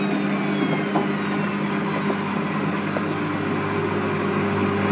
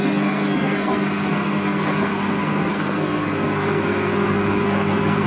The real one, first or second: first